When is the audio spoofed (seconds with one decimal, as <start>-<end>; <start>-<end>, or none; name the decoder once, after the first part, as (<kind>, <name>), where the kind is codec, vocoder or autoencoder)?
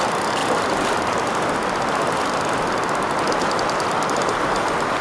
none